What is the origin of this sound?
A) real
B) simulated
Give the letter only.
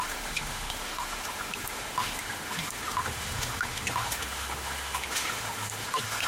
B